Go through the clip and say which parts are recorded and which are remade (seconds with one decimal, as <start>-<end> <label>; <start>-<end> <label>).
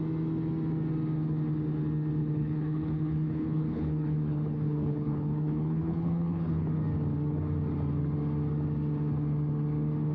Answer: 0.0-2.2 recorded; 2.2-6.7 remade; 6.7-10.1 recorded